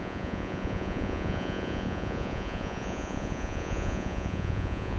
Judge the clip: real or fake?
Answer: fake